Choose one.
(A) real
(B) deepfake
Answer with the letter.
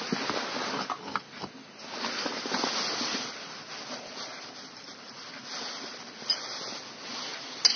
A